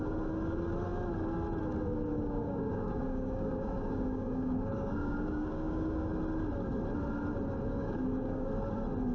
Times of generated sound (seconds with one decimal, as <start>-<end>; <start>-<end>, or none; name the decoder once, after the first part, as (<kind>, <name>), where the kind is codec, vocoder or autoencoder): 2.1-6.1 (codec, DAC); 7.7-8.5